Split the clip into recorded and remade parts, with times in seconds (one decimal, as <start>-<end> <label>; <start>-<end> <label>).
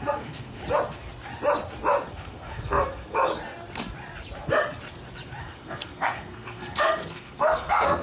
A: 0.0-0.6 remade; 0.6-2.1 recorded; 2.1-3.3 remade; 3.3-5.4 recorded; 5.4-8.0 remade